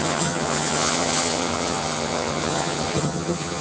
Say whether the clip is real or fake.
fake